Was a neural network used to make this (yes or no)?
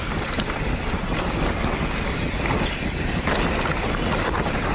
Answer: no